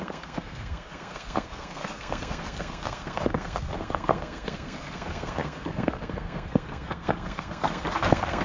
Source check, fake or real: fake